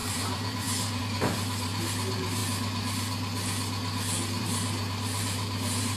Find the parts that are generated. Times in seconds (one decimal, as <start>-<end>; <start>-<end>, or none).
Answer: 0.0-2.4; 4.4-6.0